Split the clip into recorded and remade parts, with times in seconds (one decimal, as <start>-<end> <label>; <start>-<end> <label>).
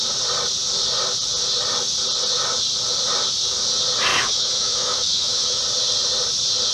0.0-4.1 recorded; 4.1-5.6 remade; 5.6-6.7 recorded